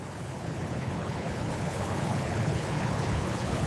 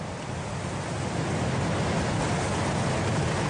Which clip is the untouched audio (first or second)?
second